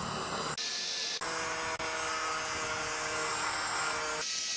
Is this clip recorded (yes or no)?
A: yes